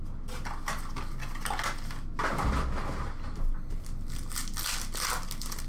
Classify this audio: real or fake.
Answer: real